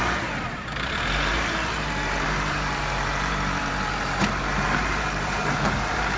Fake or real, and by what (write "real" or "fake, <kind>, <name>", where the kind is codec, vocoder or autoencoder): fake, vocoder, BigVGAN v2